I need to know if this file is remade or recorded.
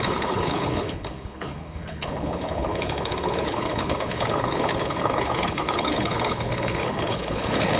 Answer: remade